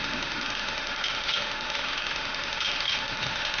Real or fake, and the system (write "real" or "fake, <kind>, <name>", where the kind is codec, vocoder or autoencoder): fake, autoencoder, DAC-VAE